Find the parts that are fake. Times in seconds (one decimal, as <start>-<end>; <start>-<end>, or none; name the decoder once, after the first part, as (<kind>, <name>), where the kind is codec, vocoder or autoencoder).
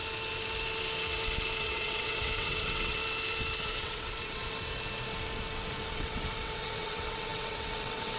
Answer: 1.6-3.0 (vocoder, WaveNeXt); 3.6-4.4; 5.9-8.2